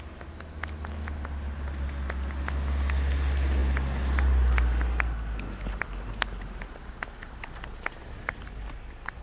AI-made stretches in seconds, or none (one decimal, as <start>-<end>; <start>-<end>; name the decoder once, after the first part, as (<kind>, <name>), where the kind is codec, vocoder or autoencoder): none